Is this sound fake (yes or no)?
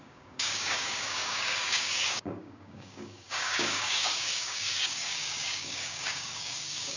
yes